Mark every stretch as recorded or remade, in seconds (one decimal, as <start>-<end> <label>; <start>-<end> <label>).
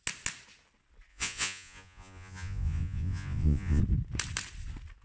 0.0-1.1 recorded; 1.1-3.8 remade; 3.8-5.0 recorded